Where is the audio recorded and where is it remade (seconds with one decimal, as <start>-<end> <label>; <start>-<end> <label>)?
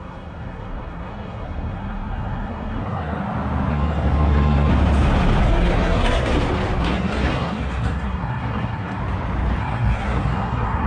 0.0-3.2 remade; 3.2-3.7 recorded; 3.7-4.7 remade; 4.7-5.4 recorded; 5.4-6.3 remade; 6.3-6.8 recorded; 6.8-9.0 remade; 9.0-9.6 recorded; 9.6-10.9 remade